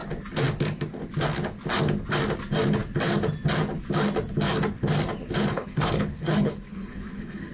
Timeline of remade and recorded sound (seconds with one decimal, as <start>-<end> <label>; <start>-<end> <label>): 0.0-5.5 recorded; 5.5-7.5 remade